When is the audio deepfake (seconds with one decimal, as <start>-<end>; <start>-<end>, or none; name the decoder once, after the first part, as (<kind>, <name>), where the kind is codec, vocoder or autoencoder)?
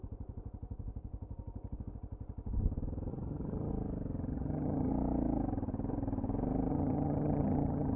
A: 3.1-3.7 (vocoder, HiFi-GAN); 4.3-4.9; 6.7-8.0